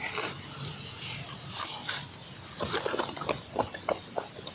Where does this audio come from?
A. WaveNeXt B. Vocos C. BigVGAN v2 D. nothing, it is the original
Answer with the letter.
D